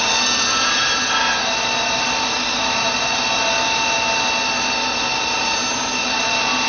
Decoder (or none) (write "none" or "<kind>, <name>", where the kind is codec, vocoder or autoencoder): none